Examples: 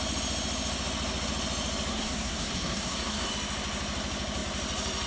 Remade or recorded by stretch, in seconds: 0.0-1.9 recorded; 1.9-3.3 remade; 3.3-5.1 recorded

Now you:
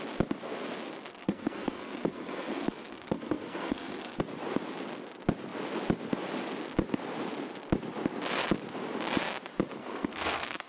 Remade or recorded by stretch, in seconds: 0.0-1.1 recorded; 1.1-4.2 remade; 4.2-9.8 recorded; 9.8-10.7 remade

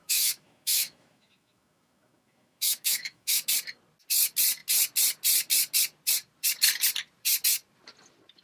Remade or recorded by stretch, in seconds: 0.0-3.5 remade; 3.5-8.4 recorded

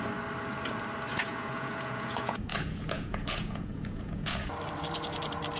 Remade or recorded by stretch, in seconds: 0.0-1.1 recorded; 1.1-4.5 remade; 4.5-5.6 recorded

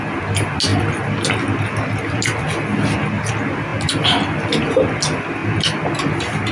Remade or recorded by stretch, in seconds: 0.0-6.5 recorded

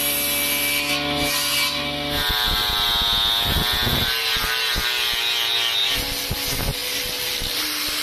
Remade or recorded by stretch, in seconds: 0.0-8.0 recorded

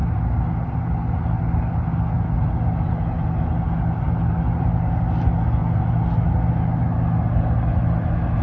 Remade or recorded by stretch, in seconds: 0.0-8.4 recorded

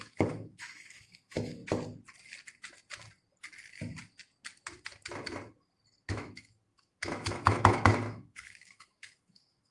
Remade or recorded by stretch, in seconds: 0.0-1.6 remade; 1.6-6.1 recorded; 6.1-9.7 remade